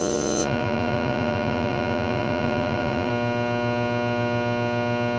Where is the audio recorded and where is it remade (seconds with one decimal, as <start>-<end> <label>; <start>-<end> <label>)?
0.0-3.1 remade; 3.1-5.2 recorded